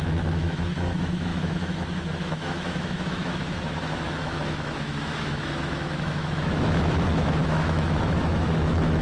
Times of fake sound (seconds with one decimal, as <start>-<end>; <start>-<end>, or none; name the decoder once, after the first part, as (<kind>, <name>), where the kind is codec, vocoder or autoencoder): 0.0-9.0 (autoencoder, DAC-VAE)